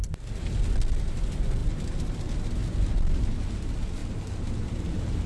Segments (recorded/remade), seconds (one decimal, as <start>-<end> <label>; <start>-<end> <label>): 0.0-2.6 recorded; 2.6-3.2 remade; 3.2-5.3 recorded